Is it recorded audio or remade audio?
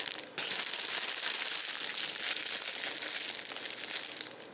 recorded